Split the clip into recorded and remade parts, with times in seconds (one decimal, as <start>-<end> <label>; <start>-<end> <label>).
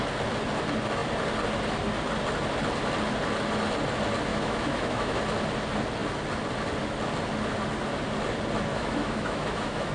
0.0-4.3 recorded; 4.3-5.2 remade; 5.2-8.7 recorded; 8.7-9.9 remade